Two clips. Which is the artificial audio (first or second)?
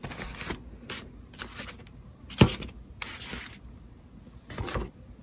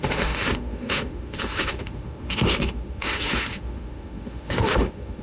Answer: second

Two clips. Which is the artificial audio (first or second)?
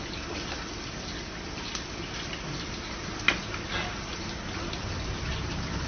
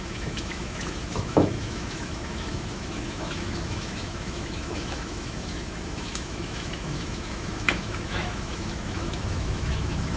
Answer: second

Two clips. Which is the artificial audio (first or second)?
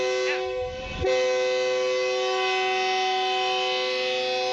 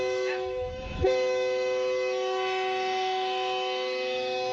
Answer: second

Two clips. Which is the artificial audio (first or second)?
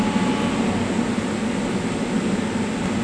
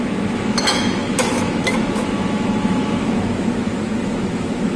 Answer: second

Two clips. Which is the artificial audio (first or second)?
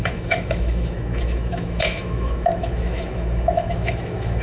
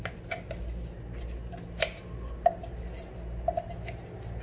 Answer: first